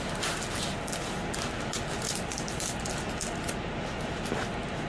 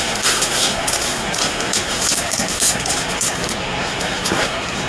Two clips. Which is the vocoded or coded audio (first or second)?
second